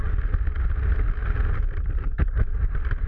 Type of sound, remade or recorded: recorded